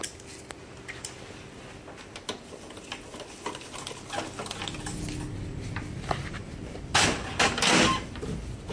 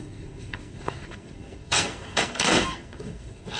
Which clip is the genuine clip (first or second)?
first